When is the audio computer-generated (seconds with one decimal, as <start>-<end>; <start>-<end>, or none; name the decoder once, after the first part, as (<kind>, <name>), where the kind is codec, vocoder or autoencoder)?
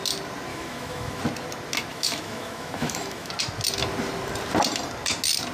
0.5-1.2 (autoencoder, DAC-VAE); 1.9-3.3